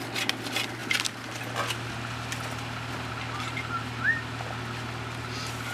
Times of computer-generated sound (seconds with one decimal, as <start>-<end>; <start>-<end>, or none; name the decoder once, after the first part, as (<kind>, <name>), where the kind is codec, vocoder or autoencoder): none